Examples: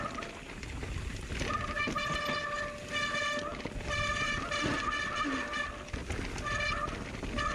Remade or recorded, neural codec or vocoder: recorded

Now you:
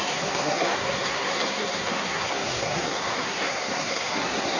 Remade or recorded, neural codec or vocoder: remade, codec, SNAC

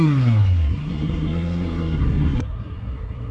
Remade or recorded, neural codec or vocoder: remade, codec, SNAC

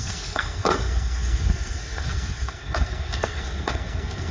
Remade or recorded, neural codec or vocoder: remade, codec, SNAC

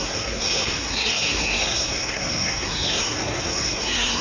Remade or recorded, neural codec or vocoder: remade, codec, SNAC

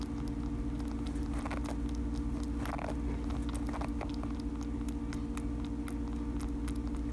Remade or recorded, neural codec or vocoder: recorded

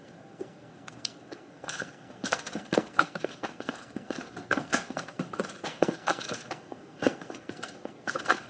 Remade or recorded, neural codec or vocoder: remade, codec, SNAC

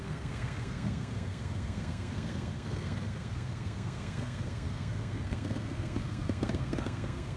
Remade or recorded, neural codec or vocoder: remade, codec, SNAC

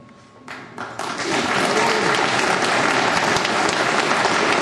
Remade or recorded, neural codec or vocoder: recorded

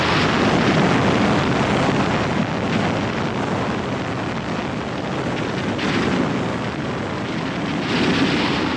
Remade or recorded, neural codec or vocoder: recorded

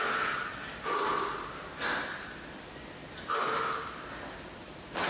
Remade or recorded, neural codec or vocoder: recorded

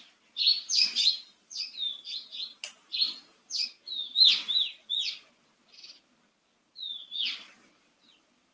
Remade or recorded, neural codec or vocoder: recorded